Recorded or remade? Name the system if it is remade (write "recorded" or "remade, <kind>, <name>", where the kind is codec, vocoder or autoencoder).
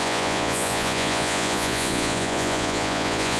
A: remade, vocoder, Vocos